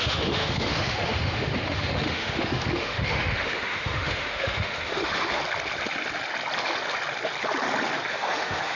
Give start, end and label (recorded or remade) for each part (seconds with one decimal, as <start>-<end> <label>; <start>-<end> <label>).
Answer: 0.0-5.4 remade; 5.4-8.1 recorded; 8.1-8.8 remade

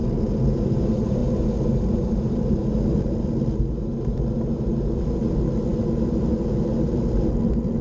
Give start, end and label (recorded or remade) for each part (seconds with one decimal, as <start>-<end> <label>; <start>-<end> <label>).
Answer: 0.0-7.8 recorded

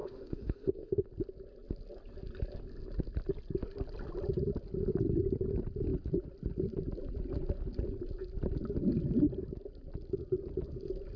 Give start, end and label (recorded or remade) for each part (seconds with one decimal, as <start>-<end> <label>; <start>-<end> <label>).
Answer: 0.0-1.1 remade; 1.1-11.2 recorded